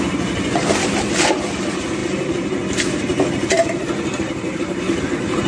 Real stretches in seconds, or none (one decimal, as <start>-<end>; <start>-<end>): 0.0-5.5